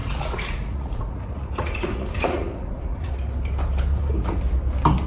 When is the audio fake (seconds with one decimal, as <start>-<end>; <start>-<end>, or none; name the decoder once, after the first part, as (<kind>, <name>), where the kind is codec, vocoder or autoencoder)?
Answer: 0.0-3.1 (vocoder, Vocos); 3.9-4.4